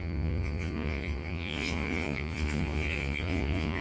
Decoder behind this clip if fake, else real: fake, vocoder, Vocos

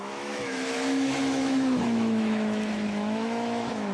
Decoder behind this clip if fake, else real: fake, autoencoder, DAC-VAE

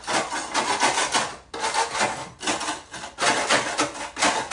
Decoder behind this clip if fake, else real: real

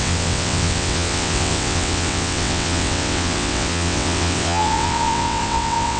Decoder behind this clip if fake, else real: fake, vocoder, WaveNeXt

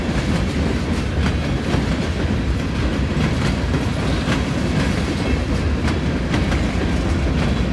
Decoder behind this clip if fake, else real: real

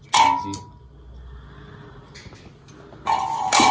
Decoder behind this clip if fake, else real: real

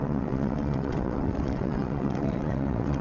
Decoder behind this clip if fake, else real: fake, vocoder, WaveNeXt